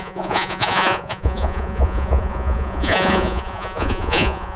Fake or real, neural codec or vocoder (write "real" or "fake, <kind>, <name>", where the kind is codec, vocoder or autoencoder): fake, vocoder, Vocos